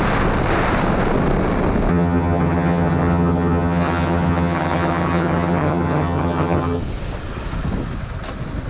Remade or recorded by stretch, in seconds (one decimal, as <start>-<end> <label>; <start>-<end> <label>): 0.0-1.9 recorded; 1.9-6.8 remade; 6.8-8.7 recorded